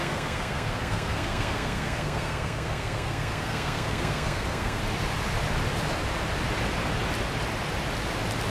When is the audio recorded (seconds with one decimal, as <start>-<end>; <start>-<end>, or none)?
4.8-8.5